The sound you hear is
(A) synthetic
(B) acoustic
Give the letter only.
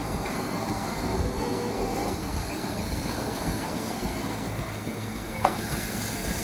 A